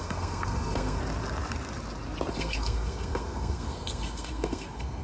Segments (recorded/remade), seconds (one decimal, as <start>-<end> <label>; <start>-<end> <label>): 0.0-1.0 remade; 1.0-2.3 recorded; 2.3-5.0 remade